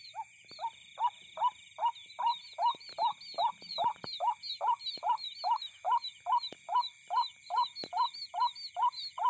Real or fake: real